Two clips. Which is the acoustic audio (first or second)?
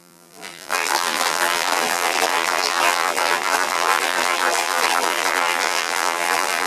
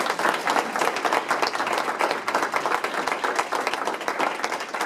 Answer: second